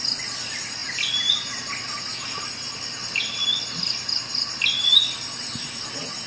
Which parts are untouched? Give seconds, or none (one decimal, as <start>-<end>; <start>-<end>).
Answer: 0.0-6.3